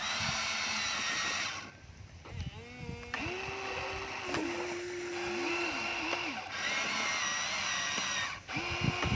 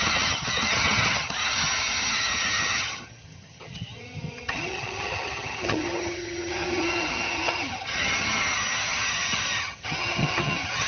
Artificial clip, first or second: second